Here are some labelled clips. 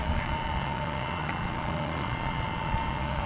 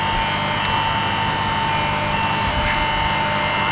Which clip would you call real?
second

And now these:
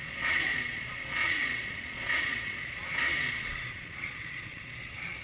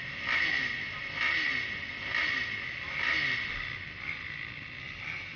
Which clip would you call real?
second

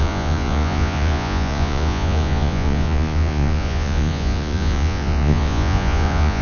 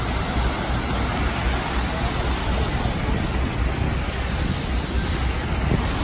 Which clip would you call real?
second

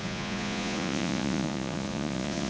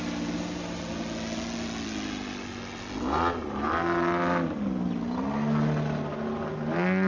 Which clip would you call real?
second